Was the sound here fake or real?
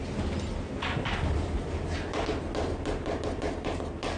real